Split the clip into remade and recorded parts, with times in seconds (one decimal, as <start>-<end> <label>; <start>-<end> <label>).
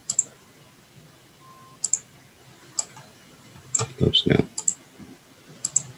0.0-0.6 remade; 0.6-2.6 recorded; 2.6-4.0 remade; 4.0-6.0 recorded